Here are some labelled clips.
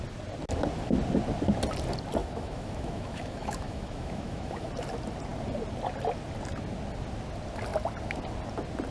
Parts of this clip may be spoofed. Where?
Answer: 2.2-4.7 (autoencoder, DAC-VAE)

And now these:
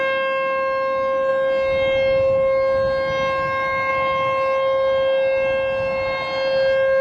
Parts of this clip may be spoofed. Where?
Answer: none

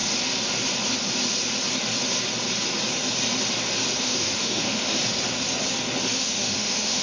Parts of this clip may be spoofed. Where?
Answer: 4.0-5.0 (autoencoder, DAC-VAE); 6.0-7.0

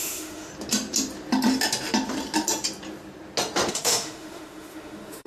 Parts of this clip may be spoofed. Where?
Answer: 0.0-0.5 (autoencoder, DAC-VAE); 3.7-5.3

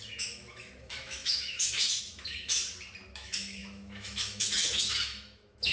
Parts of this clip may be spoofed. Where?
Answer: 0.0-2.6 (autoencoder, DAC-VAE); 3.1-5.7